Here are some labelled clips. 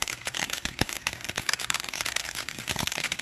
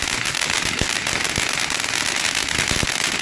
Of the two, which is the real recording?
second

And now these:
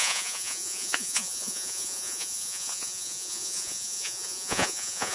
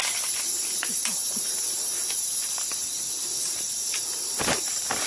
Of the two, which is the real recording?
second